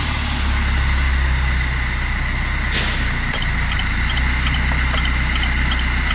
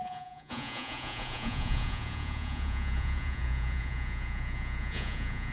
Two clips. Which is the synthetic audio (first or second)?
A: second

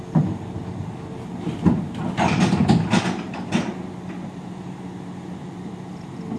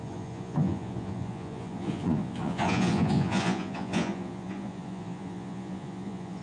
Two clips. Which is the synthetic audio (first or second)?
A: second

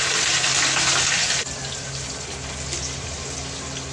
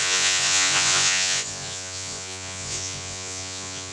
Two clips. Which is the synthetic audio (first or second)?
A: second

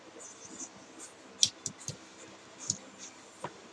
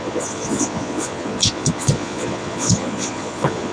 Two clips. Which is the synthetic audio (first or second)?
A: second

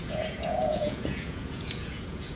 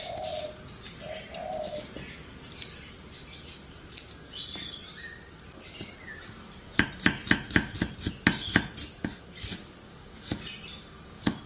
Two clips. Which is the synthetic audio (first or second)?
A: first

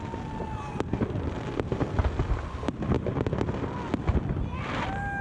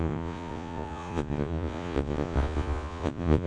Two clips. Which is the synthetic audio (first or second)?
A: second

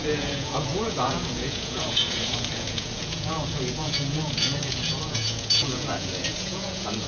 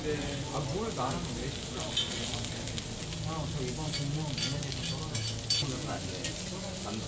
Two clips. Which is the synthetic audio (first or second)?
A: first